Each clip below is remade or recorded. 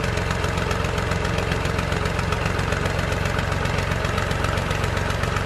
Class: recorded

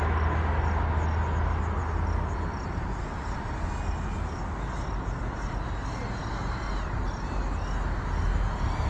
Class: recorded